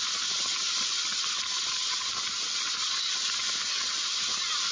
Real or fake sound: real